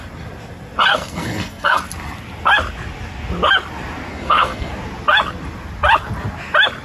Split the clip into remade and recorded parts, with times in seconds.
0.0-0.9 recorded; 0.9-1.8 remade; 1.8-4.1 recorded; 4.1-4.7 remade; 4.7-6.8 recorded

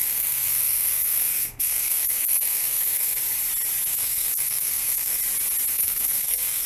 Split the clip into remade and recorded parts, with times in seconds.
0.0-3.2 remade; 3.2-3.9 recorded; 3.9-5.2 remade; 5.2-5.7 recorded; 5.7-6.7 remade

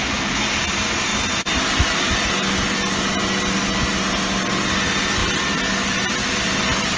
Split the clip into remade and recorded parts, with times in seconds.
0.0-7.0 recorded